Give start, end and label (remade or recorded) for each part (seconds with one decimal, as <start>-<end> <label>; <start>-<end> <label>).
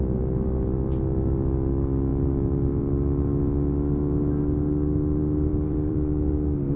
0.0-5.5 recorded; 5.5-6.3 remade; 6.3-6.8 recorded